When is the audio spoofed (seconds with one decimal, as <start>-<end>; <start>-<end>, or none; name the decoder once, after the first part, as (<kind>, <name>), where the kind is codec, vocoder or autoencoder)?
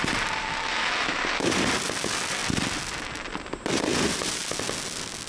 0.5-1.2 (autoencoder, DAC-VAE)